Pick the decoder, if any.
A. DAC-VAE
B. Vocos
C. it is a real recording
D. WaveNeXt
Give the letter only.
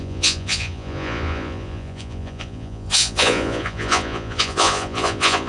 B